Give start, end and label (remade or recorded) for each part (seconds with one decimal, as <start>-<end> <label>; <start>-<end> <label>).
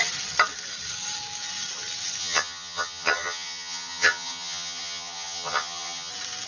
0.0-2.2 recorded; 2.2-6.1 remade; 6.1-6.5 recorded